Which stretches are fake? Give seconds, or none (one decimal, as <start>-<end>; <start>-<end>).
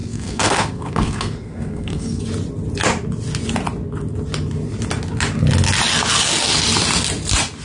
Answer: 0.0-2.2